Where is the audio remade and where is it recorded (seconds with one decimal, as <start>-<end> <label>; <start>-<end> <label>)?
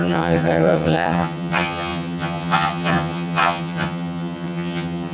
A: 0.0-5.1 remade